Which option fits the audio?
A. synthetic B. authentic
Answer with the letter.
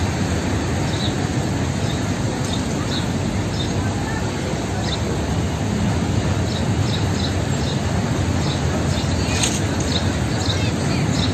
B